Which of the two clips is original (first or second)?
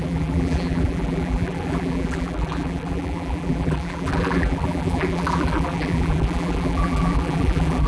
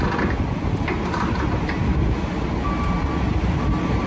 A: second